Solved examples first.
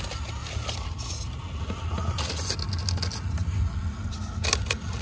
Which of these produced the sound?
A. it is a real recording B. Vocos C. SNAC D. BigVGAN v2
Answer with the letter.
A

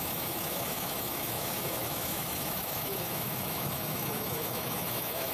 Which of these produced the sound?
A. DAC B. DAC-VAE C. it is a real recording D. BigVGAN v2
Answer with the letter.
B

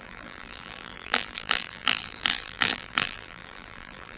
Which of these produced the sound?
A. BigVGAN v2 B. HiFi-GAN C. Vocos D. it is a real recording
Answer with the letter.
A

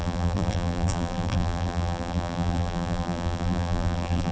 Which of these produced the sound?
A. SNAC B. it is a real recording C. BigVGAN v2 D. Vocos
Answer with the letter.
C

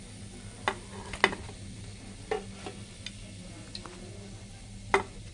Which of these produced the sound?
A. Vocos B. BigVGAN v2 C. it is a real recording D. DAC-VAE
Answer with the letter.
C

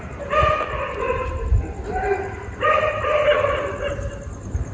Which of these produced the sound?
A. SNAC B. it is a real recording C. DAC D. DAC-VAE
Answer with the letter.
B